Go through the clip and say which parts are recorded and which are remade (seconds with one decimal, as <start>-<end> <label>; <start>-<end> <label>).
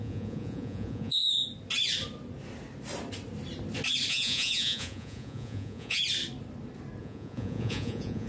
0.0-1.2 remade; 1.2-4.1 recorded; 4.1-6.0 remade; 6.0-7.0 recorded; 7.0-8.3 remade